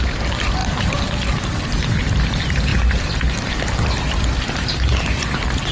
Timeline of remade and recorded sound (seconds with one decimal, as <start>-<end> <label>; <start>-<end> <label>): 0.0-5.7 remade